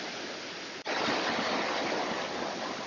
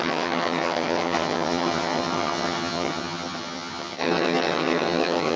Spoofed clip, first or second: second